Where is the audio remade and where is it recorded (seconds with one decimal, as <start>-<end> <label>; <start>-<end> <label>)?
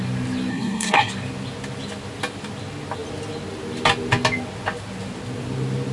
0.0-0.5 recorded; 0.5-1.1 remade; 1.1-5.9 recorded